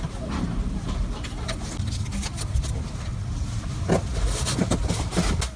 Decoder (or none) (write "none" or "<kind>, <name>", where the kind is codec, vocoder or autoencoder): none